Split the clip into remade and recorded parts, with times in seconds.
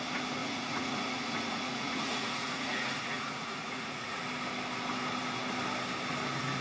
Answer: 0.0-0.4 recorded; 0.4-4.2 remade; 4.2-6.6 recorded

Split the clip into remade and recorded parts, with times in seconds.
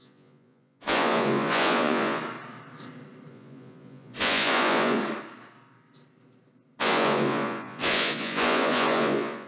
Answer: 0.0-2.2 remade; 2.2-3.3 recorded; 3.3-5.0 remade; 5.0-6.8 recorded; 6.8-9.5 remade